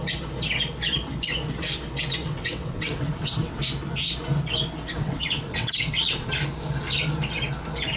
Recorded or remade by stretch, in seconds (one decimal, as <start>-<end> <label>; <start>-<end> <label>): 0.0-2.2 recorded; 2.2-3.6 remade; 3.6-5.0 recorded; 5.0-6.3 remade; 6.3-8.0 recorded